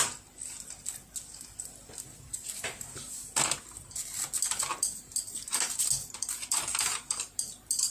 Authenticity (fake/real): real